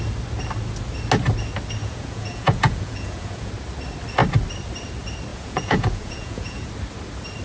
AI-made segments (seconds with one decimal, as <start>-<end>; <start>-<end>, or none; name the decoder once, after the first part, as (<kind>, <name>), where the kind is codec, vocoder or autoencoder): 1.8-3.5 (vocoder, Vocos); 5.3-6.7